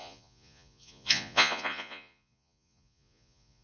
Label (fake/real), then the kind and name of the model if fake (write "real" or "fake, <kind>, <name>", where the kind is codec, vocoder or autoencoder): fake, vocoder, Vocos